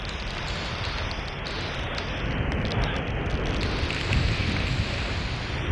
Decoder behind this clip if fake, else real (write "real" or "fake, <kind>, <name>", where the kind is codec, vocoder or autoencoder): real